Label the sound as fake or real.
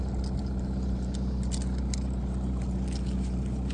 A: real